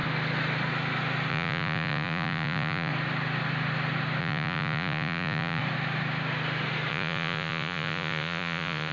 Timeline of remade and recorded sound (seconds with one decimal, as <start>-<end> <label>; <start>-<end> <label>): 0.0-1.3 recorded; 1.3-2.9 remade; 2.9-4.2 recorded; 4.2-5.6 remade; 5.6-6.9 recorded; 6.9-8.9 remade